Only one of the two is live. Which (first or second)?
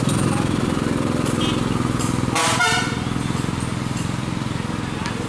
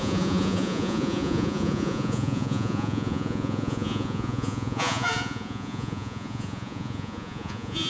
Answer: first